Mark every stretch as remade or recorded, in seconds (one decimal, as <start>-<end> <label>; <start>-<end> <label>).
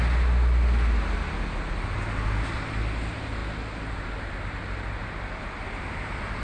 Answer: 0.0-6.4 recorded